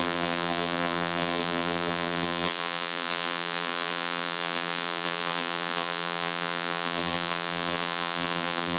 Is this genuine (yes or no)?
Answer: no